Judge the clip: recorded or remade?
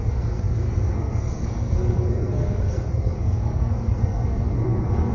remade